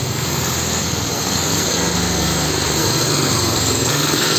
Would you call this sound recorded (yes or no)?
no